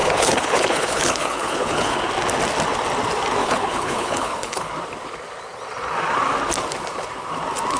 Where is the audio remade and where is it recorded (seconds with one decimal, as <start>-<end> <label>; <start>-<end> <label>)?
0.0-2.0 remade; 2.0-3.4 recorded; 3.4-4.7 remade; 4.7-7.8 recorded